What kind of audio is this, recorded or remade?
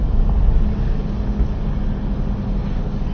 recorded